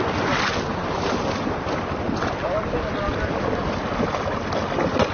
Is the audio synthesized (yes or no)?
no